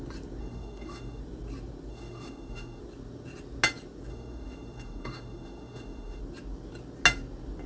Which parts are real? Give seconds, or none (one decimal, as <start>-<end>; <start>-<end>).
0.0-0.4; 1.2-1.9; 2.8-4.1; 6.2-7.7